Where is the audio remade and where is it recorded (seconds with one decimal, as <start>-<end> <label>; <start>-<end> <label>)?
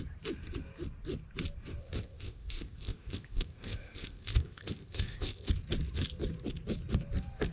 0.0-1.8 recorded; 1.8-5.5 remade; 5.5-7.5 recorded